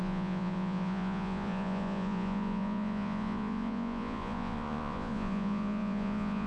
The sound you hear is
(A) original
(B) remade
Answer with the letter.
B